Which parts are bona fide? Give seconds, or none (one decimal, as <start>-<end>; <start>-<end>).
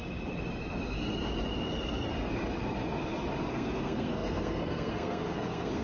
0.0-3.5